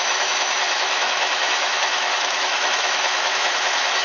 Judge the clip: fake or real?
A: fake